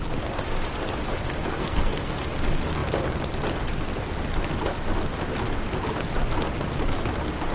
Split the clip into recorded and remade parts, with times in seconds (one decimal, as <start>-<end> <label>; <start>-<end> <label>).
0.0-1.4 recorded; 1.4-2.1 remade; 2.1-7.5 recorded

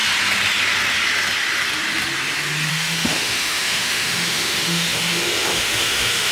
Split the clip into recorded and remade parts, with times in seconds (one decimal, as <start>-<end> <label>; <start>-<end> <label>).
0.0-2.7 recorded; 2.7-6.3 remade

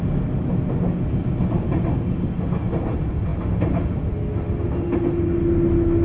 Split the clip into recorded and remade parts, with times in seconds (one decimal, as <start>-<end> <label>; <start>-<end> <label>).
0.0-6.0 recorded

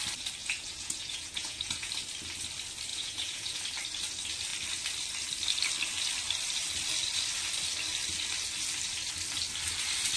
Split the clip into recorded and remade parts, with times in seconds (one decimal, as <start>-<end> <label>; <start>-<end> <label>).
0.0-0.4 recorded; 0.4-1.9 remade; 1.9-2.9 recorded; 2.9-3.6 remade; 3.6-10.2 recorded